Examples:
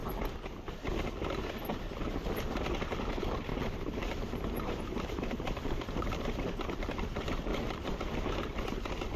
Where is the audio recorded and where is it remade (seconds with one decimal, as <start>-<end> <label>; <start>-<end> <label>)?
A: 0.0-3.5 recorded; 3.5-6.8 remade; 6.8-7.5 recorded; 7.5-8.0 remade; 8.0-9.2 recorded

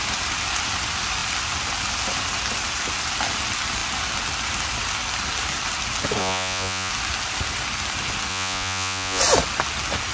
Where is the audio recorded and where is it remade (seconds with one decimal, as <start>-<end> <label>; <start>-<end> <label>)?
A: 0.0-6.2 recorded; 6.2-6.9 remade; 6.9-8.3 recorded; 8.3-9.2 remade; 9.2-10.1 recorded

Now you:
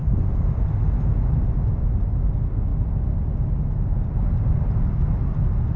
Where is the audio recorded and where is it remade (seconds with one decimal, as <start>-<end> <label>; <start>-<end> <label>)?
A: 0.0-0.7 remade; 0.7-2.7 recorded; 2.7-5.0 remade; 5.0-5.8 recorded

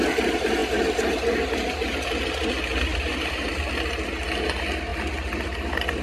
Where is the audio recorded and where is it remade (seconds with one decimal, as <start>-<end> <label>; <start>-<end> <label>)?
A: 0.0-2.9 recorded; 2.9-3.5 remade; 3.5-6.0 recorded

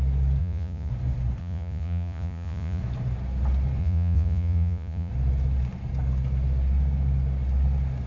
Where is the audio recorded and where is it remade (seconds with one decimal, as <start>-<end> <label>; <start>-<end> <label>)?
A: 0.0-0.4 recorded; 0.4-0.9 remade; 0.9-1.4 recorded; 1.4-2.8 remade; 2.8-3.8 recorded; 3.8-5.1 remade; 5.1-8.1 recorded

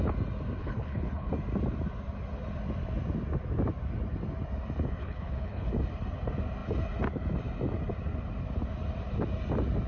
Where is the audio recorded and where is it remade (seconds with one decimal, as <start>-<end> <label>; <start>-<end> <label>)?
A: 0.0-0.6 recorded; 0.6-1.3 remade; 1.3-5.0 recorded; 5.0-5.7 remade; 5.7-9.9 recorded

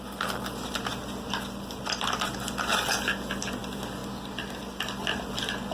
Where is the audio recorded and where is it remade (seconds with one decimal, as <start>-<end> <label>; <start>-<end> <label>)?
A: 0.0-0.9 recorded; 0.9-2.3 remade; 2.3-4.0 recorded; 4.0-5.2 remade; 5.2-5.7 recorded